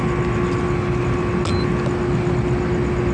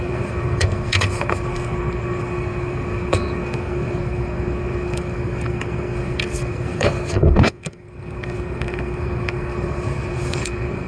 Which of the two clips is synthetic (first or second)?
second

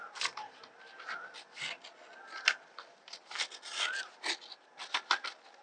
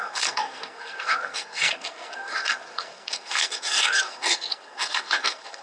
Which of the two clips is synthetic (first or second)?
second